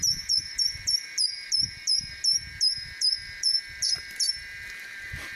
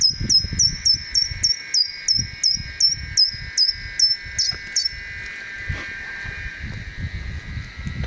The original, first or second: second